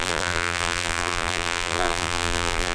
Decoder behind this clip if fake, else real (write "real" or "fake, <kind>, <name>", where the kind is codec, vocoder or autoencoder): fake, vocoder, BigVGAN v2